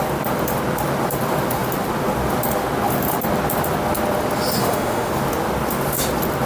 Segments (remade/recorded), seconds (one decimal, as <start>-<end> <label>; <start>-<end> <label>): 0.0-4.6 recorded; 4.6-5.1 remade; 5.1-6.5 recorded